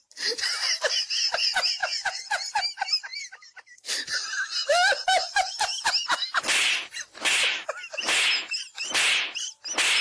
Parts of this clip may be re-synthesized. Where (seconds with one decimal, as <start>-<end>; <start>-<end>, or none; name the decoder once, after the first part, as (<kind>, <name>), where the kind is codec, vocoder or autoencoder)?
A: 1.8-2.6 (vocoder, Vocos)